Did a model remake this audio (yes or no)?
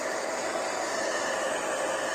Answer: no